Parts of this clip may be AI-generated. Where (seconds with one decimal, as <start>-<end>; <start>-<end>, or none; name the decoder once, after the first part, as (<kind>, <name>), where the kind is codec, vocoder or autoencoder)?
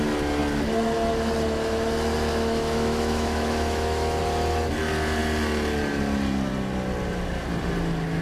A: 2.3-4.2 (autoencoder, DAC-VAE)